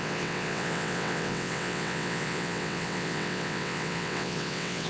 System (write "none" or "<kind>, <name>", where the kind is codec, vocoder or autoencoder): vocoder, WaveNeXt